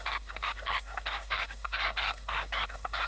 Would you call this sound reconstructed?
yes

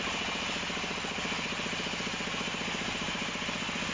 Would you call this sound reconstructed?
no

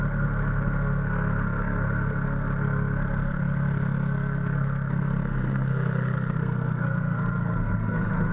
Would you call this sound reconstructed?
yes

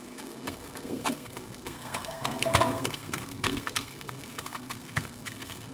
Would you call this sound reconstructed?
yes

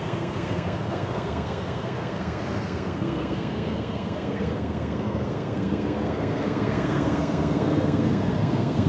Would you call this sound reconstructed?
yes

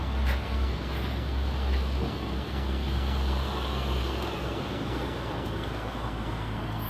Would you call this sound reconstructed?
yes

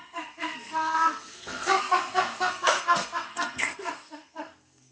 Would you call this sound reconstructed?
yes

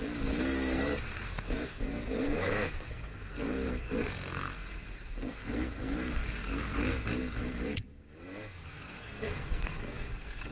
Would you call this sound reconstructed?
yes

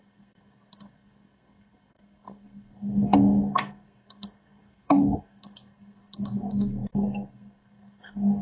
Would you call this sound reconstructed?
yes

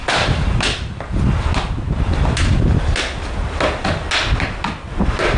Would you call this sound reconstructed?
no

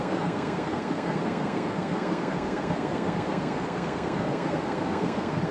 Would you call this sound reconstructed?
yes